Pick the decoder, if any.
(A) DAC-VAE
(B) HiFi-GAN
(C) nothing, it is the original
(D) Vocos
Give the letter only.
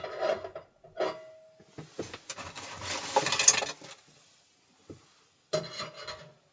C